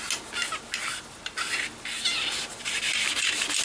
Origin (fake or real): real